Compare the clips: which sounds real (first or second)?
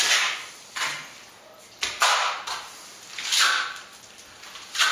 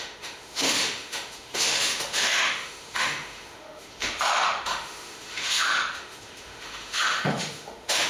first